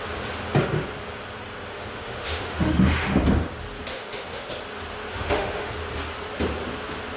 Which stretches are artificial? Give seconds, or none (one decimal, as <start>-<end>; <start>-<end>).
1.7-3.2; 3.9-4.5; 5.1-5.7